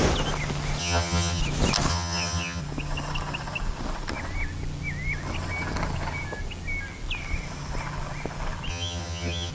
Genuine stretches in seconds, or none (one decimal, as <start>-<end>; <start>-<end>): 0.0-0.8; 1.4-1.9; 2.6-8.7